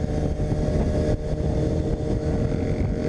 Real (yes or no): yes